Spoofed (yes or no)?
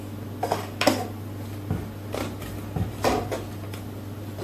no